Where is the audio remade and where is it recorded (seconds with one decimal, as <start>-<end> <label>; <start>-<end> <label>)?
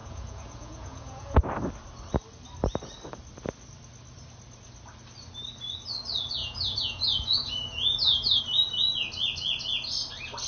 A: 0.0-1.4 remade; 1.4-6.4 recorded; 6.4-8.4 remade; 8.4-10.5 recorded